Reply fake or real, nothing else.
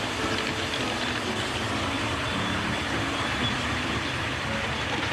real